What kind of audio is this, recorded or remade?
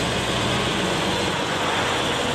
remade